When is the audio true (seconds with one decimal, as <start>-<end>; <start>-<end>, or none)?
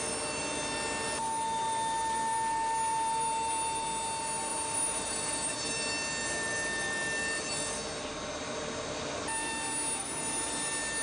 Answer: 0.0-4.5; 5.9-11.0